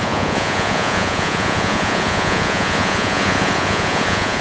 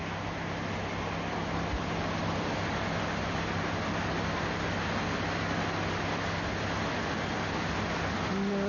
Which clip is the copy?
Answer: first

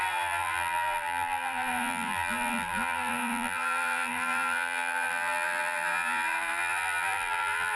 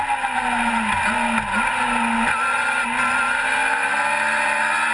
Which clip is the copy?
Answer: first